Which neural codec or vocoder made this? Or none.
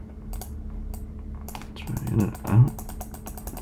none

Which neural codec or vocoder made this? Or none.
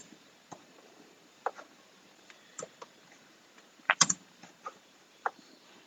vocoder, BigVGAN v2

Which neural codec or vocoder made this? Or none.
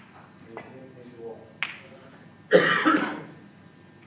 none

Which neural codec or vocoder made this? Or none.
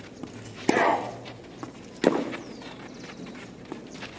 none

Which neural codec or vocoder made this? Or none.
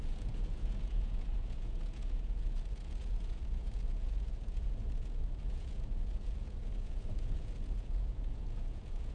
vocoder, Vocos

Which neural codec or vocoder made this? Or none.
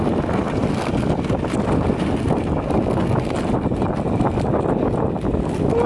none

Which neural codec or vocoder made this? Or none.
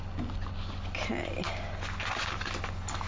none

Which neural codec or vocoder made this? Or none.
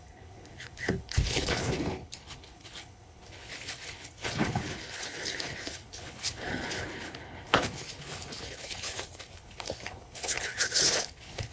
codec, HILCodec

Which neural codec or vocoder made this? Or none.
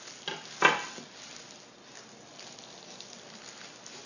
none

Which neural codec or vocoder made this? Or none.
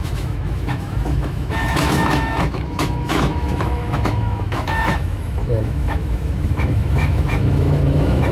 autoencoder, DAC-VAE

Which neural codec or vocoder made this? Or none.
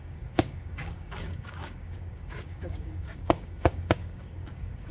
codec, DAC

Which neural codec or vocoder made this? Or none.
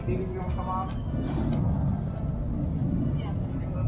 none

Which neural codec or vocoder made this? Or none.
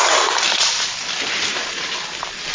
none